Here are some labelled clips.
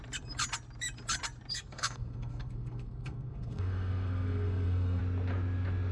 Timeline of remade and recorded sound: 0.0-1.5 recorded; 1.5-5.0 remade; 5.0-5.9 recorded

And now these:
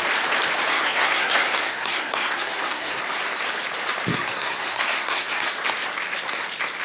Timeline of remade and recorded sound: 0.0-0.7 recorded; 0.7-3.0 remade; 3.0-4.1 recorded; 4.1-5.5 remade; 5.5-6.8 recorded